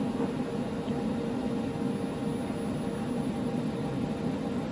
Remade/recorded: recorded